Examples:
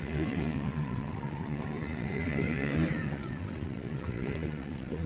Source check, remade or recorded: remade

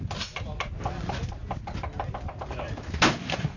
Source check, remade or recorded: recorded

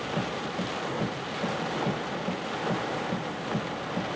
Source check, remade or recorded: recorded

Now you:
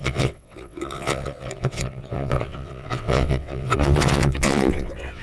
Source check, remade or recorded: remade